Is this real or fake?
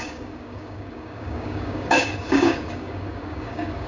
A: fake